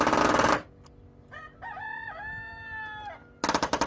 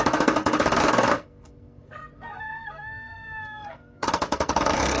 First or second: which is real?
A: first